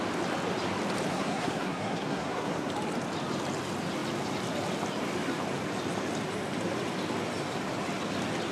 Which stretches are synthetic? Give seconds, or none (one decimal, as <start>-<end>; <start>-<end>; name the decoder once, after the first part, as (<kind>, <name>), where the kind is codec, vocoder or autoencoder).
1.1-2.7 (codec, SNAC)